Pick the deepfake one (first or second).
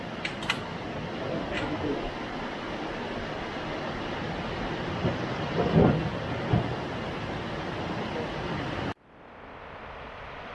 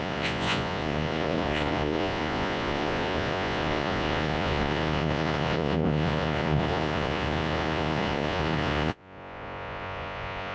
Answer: second